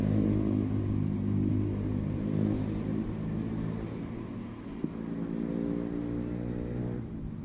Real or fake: real